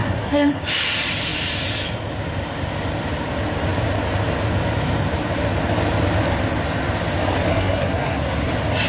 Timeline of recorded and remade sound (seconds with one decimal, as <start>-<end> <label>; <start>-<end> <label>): 0.0-0.6 remade; 0.6-7.5 recorded; 7.5-8.5 remade; 8.5-8.9 recorded